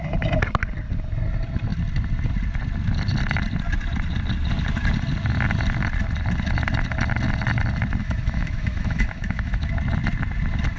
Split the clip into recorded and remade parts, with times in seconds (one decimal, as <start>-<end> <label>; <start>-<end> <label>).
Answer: 0.0-8.0 recorded; 8.0-9.7 remade; 9.7-10.8 recorded